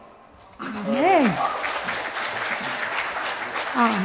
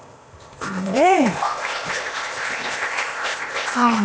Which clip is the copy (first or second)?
second